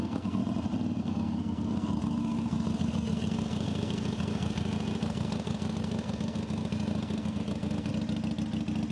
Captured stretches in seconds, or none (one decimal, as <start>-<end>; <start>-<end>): 0.4-1.0; 7.9-8.9

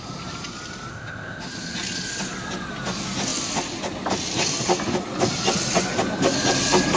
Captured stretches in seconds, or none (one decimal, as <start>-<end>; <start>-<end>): 0.0-0.9; 1.4-7.0

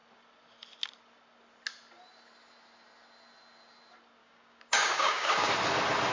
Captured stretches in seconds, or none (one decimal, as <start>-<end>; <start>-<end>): 0.0-4.2; 5.5-6.1

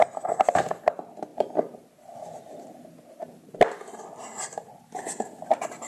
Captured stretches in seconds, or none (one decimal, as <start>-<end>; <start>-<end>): 0.0-1.3; 4.0-5.9

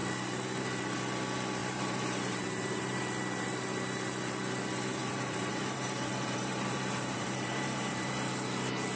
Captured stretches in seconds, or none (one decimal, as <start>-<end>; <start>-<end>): 0.0-1.6; 3.0-5.0; 8.3-9.0

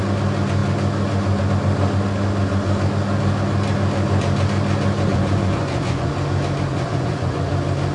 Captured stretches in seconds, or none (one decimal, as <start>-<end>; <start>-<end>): 0.0-5.1; 6.1-6.7; 7.5-7.9